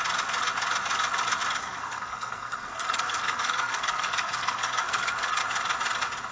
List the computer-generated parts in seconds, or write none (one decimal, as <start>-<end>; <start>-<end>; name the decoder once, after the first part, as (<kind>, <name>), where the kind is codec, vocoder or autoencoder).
1.6-5.4 (codec, SNAC)